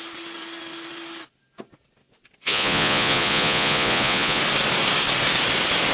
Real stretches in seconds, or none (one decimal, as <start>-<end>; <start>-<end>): 0.0-2.4; 4.4-5.9